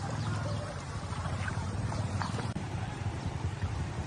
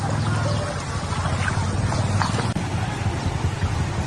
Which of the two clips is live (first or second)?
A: second